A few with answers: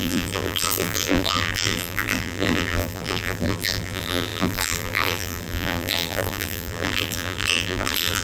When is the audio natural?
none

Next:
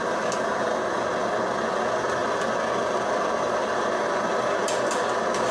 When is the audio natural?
0.0-5.5

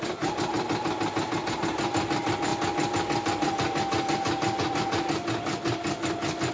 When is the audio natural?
0.0-6.5

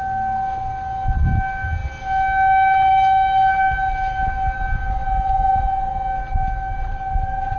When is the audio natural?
0.0-7.6